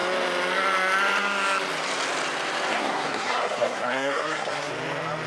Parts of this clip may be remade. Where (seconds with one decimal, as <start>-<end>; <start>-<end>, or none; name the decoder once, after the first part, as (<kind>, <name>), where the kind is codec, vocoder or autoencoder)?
2.7-4.7 (codec, SNAC)